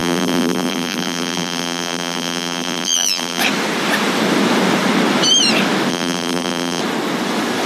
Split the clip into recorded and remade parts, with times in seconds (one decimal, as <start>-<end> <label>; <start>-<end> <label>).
0.0-3.4 remade; 3.4-5.9 recorded; 5.9-6.8 remade; 6.8-7.7 recorded

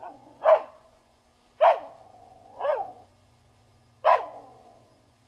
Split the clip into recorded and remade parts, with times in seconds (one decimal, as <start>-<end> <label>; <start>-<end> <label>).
0.0-1.3 remade; 1.3-2.2 recorded; 2.2-5.3 remade

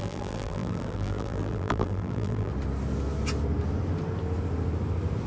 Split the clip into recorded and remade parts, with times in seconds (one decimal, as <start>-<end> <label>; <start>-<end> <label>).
0.0-2.5 remade; 2.5-5.3 recorded

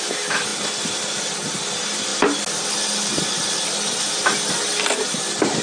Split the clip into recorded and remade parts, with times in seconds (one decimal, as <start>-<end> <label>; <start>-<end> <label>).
0.0-5.6 recorded

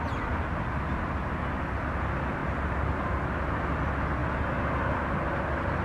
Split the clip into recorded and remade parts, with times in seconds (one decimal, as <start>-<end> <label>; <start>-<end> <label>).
0.0-2.4 recorded; 2.4-3.2 remade; 3.2-5.8 recorded